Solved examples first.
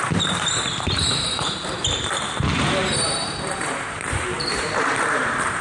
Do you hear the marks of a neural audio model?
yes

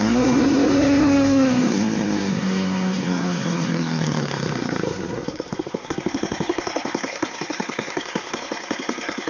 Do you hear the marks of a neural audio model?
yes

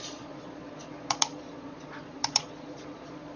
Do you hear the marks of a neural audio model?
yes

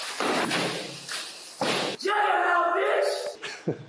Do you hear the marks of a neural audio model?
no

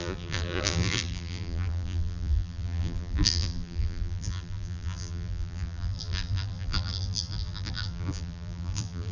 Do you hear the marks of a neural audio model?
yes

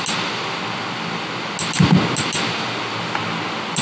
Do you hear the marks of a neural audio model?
no